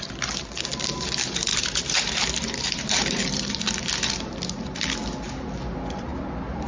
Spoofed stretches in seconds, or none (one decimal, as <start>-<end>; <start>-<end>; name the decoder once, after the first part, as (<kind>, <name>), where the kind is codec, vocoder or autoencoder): 1.5-3.5 (vocoder, BigVGAN v2)